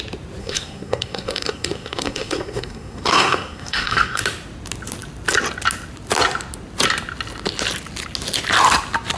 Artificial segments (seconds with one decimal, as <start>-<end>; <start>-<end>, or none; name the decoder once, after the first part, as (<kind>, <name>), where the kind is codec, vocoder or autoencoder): 0.4-4.2 (codec, SNAC)